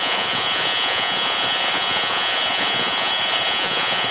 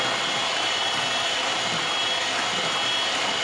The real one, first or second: second